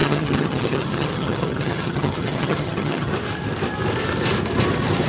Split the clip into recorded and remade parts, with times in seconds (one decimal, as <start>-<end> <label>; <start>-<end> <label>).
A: 0.0-3.1 remade; 3.1-5.1 recorded